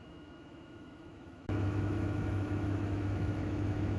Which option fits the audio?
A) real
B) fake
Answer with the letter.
B